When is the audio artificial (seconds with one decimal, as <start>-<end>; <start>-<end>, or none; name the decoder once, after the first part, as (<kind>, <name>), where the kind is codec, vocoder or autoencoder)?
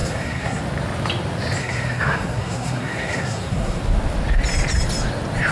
0.0-0.6 (codec, SNAC); 1.6-3.8